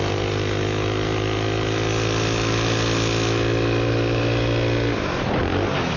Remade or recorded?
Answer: recorded